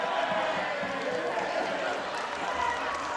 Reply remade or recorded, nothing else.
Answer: recorded